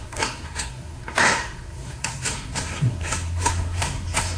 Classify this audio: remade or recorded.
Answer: remade